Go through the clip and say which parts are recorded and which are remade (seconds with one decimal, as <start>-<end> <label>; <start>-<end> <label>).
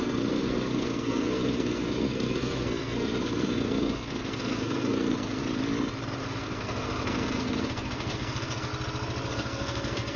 0.0-5.4 remade; 5.4-6.2 recorded; 6.2-8.7 remade; 8.7-9.3 recorded; 9.3-10.2 remade